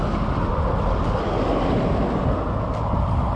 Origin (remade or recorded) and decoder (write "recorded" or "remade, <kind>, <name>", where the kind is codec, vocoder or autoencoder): recorded